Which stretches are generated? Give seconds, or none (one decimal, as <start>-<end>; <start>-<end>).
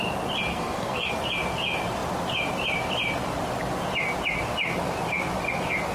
0.5-1.1